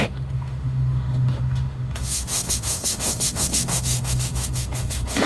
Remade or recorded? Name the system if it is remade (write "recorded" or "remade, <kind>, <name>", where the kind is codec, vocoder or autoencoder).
remade, autoencoder, DAC-VAE